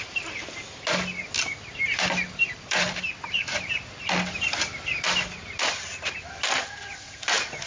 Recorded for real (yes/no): yes